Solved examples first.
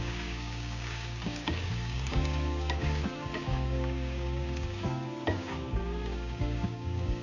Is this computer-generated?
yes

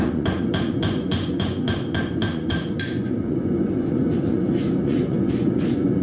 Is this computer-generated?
yes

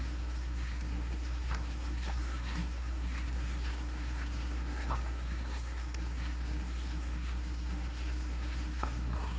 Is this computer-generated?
yes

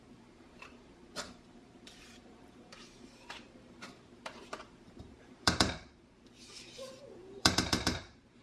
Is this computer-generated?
yes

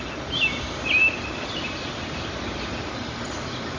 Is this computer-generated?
no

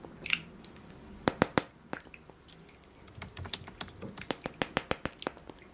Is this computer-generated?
no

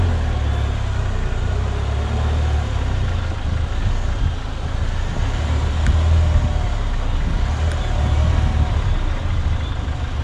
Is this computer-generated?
no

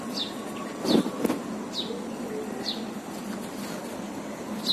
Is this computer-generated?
no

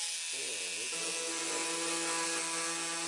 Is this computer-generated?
no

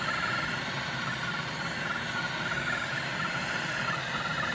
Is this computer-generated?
no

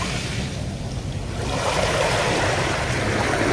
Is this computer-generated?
no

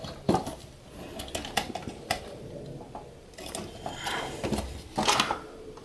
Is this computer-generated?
no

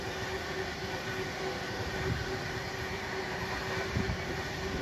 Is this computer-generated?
no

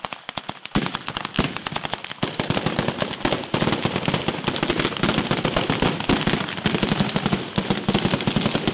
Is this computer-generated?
no